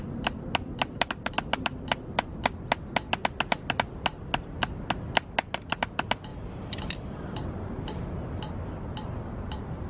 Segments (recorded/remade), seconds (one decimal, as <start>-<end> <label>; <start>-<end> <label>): 0.0-9.9 recorded

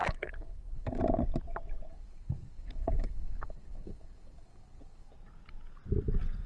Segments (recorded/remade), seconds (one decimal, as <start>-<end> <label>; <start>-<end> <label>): 0.0-1.0 remade; 1.0-1.9 recorded; 1.9-5.1 remade; 5.1-6.5 recorded

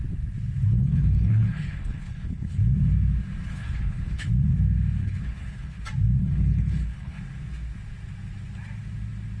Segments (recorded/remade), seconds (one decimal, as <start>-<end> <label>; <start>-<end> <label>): 0.0-0.8 recorded; 0.8-2.6 remade; 2.6-3.4 recorded; 3.4-4.3 remade; 4.3-5.0 recorded; 5.0-5.8 remade; 5.8-6.2 recorded; 6.2-7.2 remade; 7.2-9.4 recorded

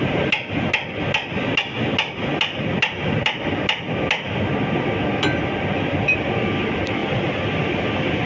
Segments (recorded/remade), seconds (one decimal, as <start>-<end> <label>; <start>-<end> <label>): 0.0-8.3 recorded

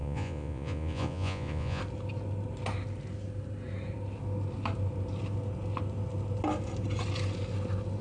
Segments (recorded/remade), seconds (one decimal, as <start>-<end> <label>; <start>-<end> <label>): 0.0-1.8 remade; 1.8-8.0 recorded

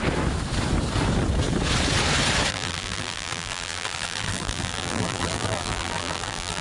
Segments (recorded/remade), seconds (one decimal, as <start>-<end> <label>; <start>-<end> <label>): 0.0-2.5 recorded; 2.5-6.6 remade

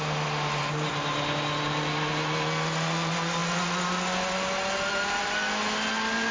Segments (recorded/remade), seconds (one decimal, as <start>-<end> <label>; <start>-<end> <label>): 0.0-6.3 recorded

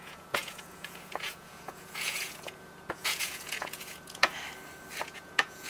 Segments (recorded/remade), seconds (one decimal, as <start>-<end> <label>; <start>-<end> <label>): 0.0-4.3 remade; 4.3-5.0 recorded; 5.0-5.7 remade